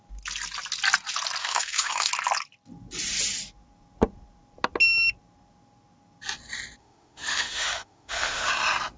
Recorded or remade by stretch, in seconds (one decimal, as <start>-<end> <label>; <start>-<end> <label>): 0.0-1.4 recorded; 1.4-2.1 remade; 2.1-6.8 recorded; 6.8-8.5 remade; 8.5-9.0 recorded